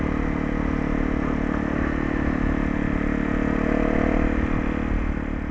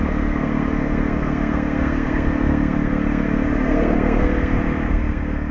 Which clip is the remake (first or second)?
second